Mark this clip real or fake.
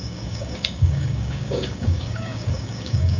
fake